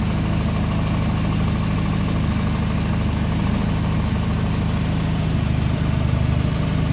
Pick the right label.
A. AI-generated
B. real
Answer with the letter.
B